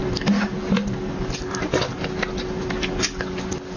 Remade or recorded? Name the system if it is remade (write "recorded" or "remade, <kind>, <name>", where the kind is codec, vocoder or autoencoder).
recorded